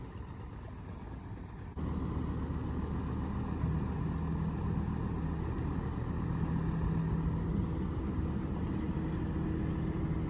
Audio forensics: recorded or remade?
recorded